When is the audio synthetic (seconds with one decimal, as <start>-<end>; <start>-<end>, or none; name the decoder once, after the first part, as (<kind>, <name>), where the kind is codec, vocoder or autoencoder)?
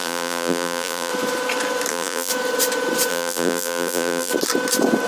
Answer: 0.0-1.1 (vocoder, BigVGAN v2); 1.9-2.3; 3.1-4.3